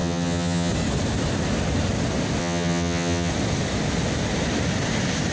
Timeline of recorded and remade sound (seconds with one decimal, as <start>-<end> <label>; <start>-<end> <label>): 0.0-0.7 remade; 0.7-2.4 recorded; 2.4-3.3 remade; 3.3-5.3 recorded